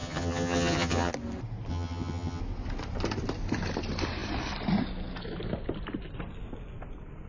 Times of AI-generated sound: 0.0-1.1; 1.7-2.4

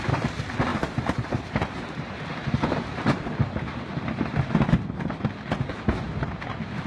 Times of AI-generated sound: 0.7-3.4

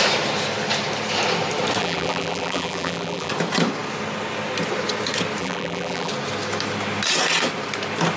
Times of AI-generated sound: 1.8-3.3; 5.4-6.1

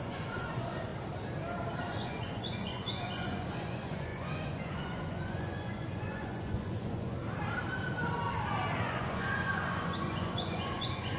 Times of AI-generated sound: 0.0-0.9; 1.8-7.2; 8.8-11.2